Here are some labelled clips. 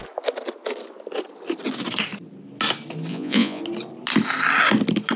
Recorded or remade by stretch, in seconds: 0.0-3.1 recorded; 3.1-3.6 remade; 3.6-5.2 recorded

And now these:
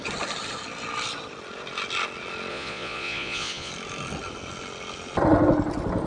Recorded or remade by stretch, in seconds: 0.0-2.5 recorded; 2.5-3.7 remade; 3.7-6.1 recorded

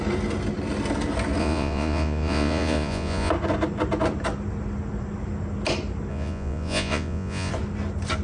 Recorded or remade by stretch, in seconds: 0.0-1.4 recorded; 1.4-3.3 remade; 3.3-6.1 recorded; 6.1-7.5 remade; 7.5-8.2 recorded

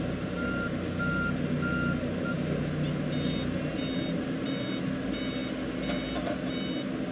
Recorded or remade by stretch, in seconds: 0.0-7.1 recorded

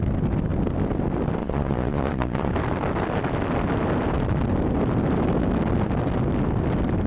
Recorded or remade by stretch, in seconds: 0.0-1.4 recorded; 1.4-2.5 remade; 2.5-7.1 recorded

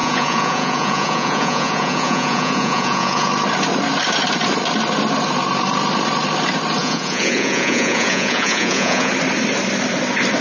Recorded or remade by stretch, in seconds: 0.0-3.3 remade; 3.3-6.8 recorded; 6.8-9.1 remade; 9.1-10.4 recorded

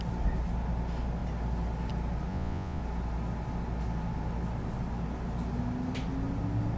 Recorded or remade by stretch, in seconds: 0.0-2.3 recorded; 2.3-2.8 remade; 2.8-6.8 recorded

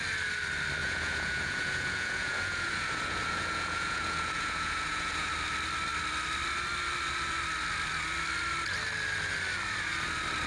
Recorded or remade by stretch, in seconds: 0.0-0.8 recorded; 0.8-5.3 remade; 5.3-10.5 recorded